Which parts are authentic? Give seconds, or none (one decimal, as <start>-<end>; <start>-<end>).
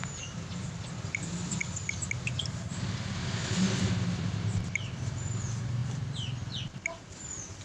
1.6-2.4